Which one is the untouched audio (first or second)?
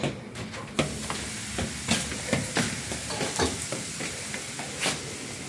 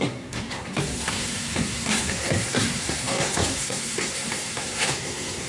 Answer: first